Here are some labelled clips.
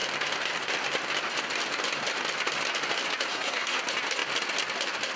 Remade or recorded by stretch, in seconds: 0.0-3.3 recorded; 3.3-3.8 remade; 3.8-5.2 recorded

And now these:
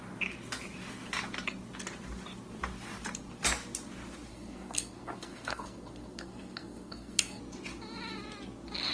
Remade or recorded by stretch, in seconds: 0.0-4.3 recorded; 4.3-7.4 remade; 7.4-8.9 recorded

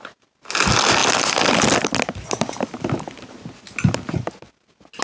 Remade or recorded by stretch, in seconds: 0.0-5.0 recorded

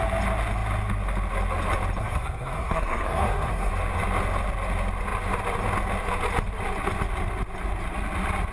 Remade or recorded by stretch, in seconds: 0.0-2.0 recorded; 2.0-3.7 remade; 3.7-8.5 recorded

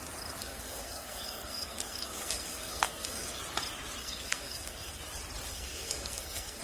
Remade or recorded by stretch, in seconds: 0.0-0.4 recorded; 0.4-3.4 remade; 3.4-4.0 recorded; 4.0-5.0 remade; 5.0-5.5 recorded; 5.5-6.6 remade

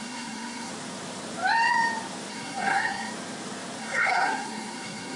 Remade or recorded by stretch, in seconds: 0.0-0.7 remade; 0.7-2.3 recorded; 2.3-3.1 remade; 3.1-3.8 recorded; 3.8-5.2 remade

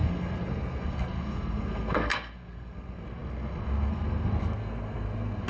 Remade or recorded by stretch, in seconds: 0.0-5.5 remade

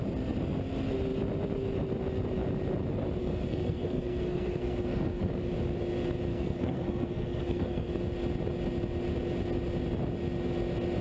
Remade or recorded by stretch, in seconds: 0.0-3.2 recorded; 3.2-5.3 remade; 5.3-6.3 recorded; 6.3-7.9 remade; 7.9-11.0 recorded